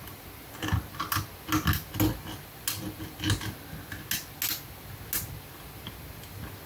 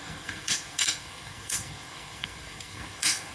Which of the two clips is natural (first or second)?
first